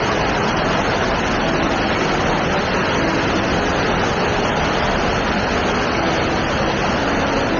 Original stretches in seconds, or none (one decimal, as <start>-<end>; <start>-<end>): 0.0-7.6